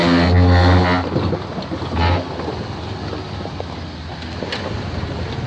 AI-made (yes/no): no